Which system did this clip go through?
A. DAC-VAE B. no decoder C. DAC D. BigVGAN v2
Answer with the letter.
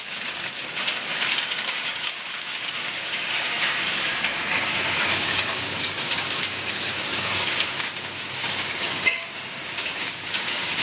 C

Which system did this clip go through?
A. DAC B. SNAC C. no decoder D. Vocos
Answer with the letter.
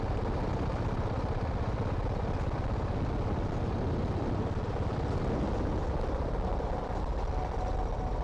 C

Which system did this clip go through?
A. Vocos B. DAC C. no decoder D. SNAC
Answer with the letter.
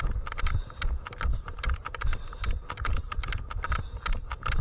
C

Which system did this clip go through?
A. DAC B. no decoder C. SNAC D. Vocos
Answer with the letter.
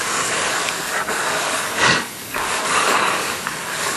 A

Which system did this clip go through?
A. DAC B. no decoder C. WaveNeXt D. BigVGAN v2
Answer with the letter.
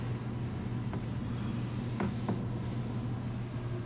B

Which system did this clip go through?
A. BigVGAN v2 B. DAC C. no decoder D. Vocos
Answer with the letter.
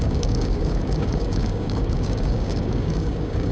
B